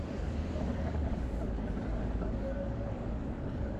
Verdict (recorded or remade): remade